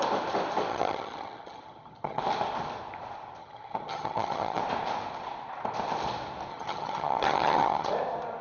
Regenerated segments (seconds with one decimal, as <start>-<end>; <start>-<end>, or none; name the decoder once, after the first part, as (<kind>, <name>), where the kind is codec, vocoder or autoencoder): 0.7-2.2 (vocoder, HiFi-GAN); 3.4-4.6; 6.5-7.9